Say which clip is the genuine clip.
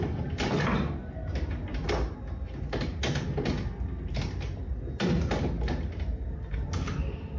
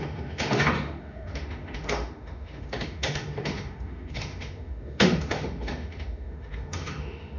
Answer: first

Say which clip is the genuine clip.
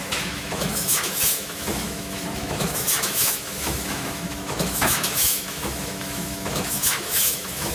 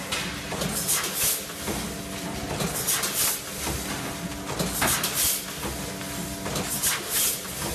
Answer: second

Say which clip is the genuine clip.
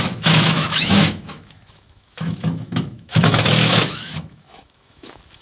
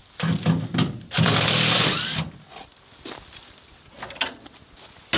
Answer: second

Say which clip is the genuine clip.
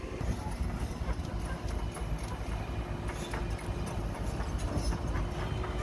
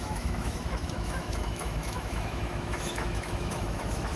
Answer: first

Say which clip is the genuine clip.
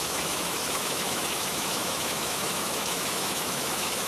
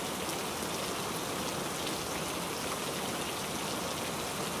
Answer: second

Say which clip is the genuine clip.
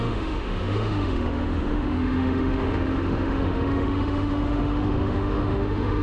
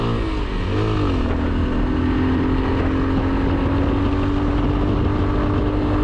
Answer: second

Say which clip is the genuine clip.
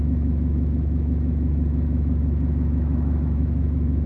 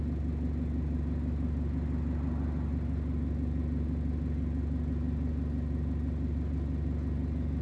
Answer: second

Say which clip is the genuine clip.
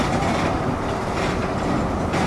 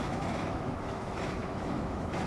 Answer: first